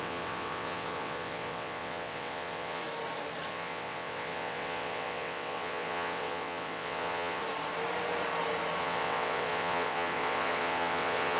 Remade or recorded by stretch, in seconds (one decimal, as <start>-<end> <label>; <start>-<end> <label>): 0.0-2.8 remade; 2.8-3.5 recorded; 3.5-7.4 remade; 7.4-8.8 recorded; 8.8-11.4 remade